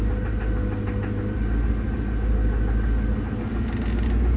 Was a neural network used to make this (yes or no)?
no